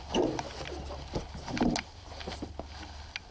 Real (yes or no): yes